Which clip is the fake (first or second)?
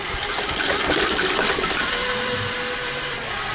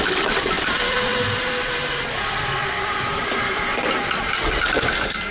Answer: second